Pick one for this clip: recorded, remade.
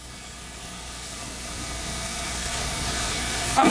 remade